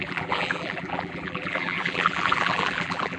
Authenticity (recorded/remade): remade